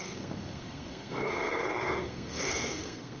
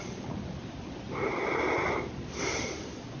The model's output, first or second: first